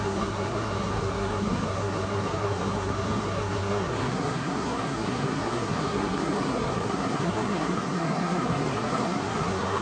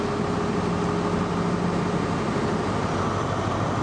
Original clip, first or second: second